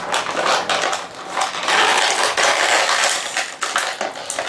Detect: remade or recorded recorded